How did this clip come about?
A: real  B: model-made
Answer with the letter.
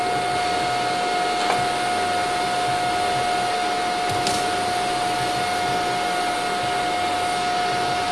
A